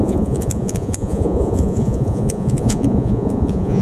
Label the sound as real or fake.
fake